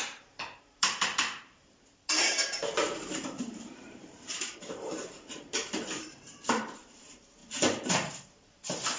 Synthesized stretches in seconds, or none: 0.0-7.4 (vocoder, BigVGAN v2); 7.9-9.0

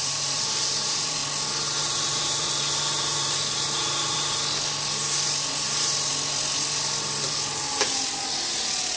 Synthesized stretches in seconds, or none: 0.0-1.2 (vocoder, BigVGAN v2); 1.8-4.4

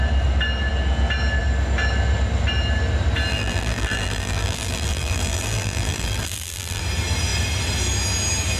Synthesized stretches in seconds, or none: 3.3-6.8 (vocoder, BigVGAN v2)

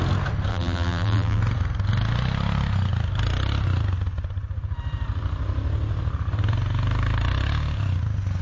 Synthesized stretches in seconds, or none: 0.5-1.4 (vocoder, BigVGAN v2)

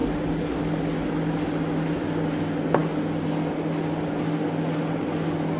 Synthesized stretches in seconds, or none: 0.0-0.6 (vocoder, BigVGAN v2)

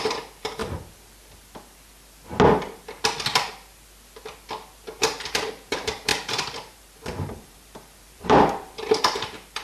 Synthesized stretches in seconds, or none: 0.0-0.6 (vocoder, BigVGAN v2); 5.0-9.6

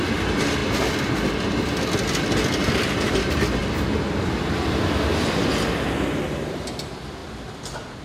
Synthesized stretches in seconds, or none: none